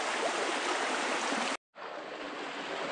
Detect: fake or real real